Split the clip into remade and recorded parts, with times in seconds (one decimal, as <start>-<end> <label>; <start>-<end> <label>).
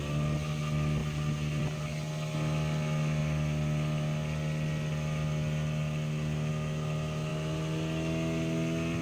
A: 0.0-9.0 recorded